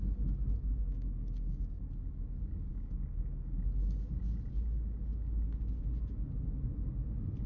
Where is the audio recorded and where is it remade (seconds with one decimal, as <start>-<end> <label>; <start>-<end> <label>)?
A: 0.0-0.7 recorded; 0.7-1.8 remade; 1.8-2.7 recorded; 2.7-3.5 remade; 3.5-7.5 recorded